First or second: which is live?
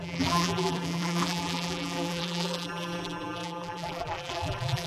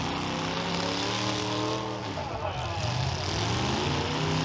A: second